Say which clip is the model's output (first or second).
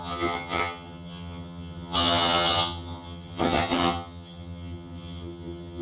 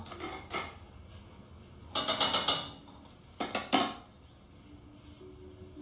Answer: first